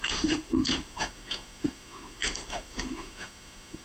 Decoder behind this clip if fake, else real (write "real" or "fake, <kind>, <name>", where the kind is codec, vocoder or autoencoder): fake, autoencoder, DAC-VAE